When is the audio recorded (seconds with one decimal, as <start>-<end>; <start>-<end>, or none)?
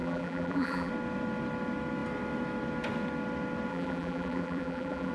0.9-3.7